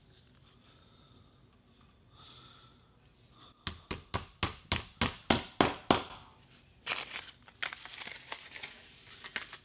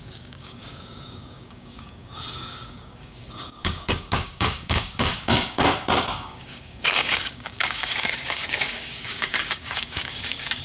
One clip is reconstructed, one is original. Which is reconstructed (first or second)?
second